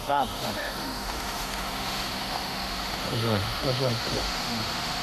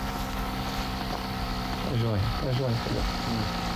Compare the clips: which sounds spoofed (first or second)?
first